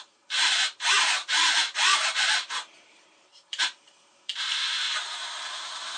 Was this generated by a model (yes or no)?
yes